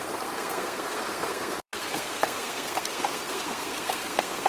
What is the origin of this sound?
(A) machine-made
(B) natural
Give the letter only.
A